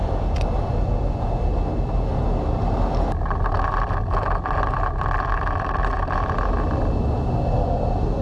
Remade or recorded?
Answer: recorded